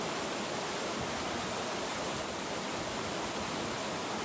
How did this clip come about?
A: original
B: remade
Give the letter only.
A